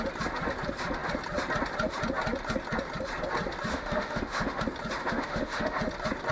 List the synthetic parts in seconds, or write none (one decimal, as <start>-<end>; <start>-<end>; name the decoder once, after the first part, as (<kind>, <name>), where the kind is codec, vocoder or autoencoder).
3.7-4.6 (autoencoder, DAC-VAE); 5.0-5.8